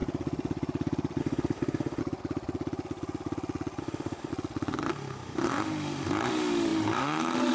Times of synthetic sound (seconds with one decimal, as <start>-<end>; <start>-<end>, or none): 1.2-2.0; 3.8-4.3; 4.9-7.5